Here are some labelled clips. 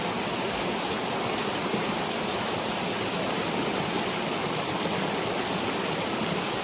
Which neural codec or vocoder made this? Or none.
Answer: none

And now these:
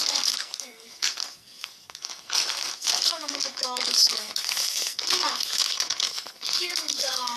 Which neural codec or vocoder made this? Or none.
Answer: codec, SNAC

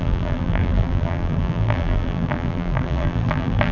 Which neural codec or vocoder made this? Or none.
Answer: vocoder, BigVGAN v2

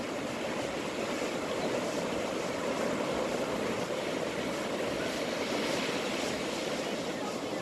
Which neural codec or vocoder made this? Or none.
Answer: none